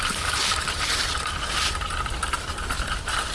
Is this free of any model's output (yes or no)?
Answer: no